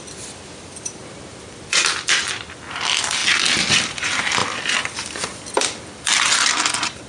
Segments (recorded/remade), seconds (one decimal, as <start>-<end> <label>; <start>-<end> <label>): 0.0-3.2 remade; 3.2-3.7 recorded; 3.7-7.1 remade